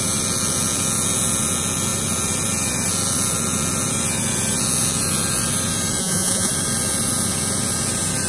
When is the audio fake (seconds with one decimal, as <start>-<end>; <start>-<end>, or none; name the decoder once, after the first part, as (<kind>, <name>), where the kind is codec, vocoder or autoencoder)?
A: 6.0-6.5 (vocoder, Vocos)

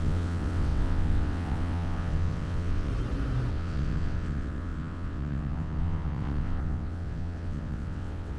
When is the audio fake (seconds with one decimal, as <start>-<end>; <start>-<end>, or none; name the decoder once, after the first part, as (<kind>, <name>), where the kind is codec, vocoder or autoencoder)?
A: 0.0-2.9 (vocoder, WaveNeXt); 3.5-8.4

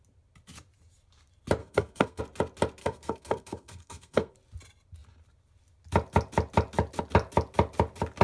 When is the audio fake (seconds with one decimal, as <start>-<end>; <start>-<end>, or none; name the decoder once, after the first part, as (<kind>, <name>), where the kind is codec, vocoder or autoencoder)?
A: 1.6-2.2 (codec, SNAC); 2.8-4.3

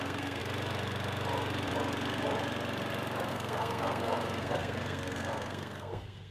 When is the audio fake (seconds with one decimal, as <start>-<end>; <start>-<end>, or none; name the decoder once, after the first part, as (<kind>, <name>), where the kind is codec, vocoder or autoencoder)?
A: 0.0-0.4 (codec, SNAC); 3.3-6.3

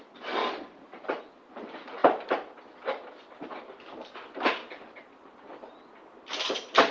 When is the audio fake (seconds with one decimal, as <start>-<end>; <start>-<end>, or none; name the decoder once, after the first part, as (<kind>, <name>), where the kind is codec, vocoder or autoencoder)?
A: none

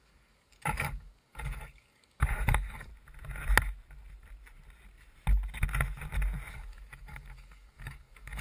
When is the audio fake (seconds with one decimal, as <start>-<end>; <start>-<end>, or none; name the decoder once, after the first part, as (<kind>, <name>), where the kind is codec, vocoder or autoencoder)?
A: 0.0-2.9 (codec, DAC); 6.5-8.4

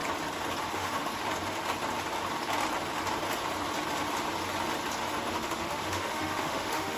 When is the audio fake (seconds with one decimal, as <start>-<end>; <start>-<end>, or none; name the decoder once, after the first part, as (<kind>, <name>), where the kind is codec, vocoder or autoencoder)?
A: 0.7-1.1 (autoencoder, DAC-VAE); 5.3-7.0